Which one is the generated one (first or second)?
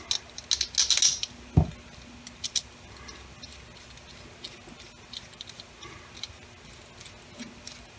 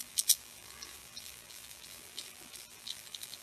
second